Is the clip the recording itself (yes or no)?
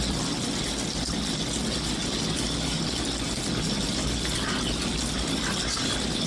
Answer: yes